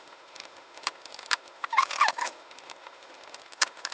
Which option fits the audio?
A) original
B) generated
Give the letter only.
B